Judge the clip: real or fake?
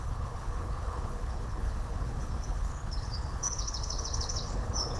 fake